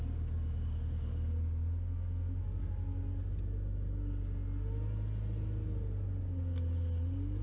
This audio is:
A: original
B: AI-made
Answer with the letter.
A